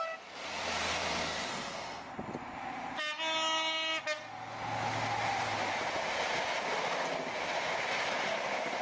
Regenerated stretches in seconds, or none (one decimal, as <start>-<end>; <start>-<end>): 1.5-2.1